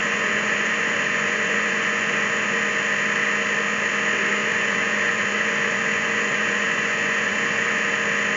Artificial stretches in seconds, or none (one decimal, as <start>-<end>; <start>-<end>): 0.0-2.6; 4.4-7.9